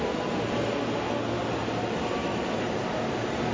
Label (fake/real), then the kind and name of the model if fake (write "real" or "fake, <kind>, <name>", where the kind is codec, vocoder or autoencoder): real